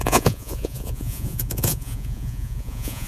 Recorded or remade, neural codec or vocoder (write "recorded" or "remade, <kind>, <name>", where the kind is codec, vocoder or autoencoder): remade, vocoder, Vocos